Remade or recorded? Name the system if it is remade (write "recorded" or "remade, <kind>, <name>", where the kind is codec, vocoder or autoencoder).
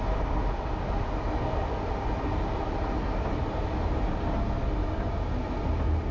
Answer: recorded